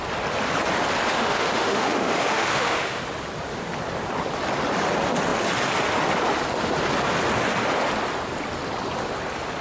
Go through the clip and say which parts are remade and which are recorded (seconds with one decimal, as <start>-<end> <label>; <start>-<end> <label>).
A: 0.0-1.1 recorded; 1.1-3.0 remade; 3.0-9.6 recorded